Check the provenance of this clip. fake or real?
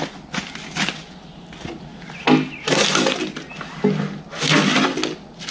real